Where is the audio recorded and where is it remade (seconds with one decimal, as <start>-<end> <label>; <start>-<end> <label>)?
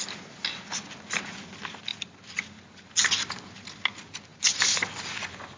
0.0-5.6 recorded